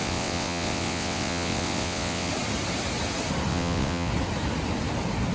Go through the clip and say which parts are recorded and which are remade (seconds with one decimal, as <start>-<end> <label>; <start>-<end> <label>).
0.0-2.3 remade; 2.3-3.5 recorded; 3.5-4.1 remade; 4.1-5.3 recorded